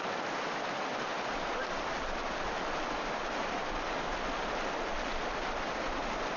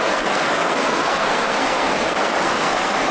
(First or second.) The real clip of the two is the first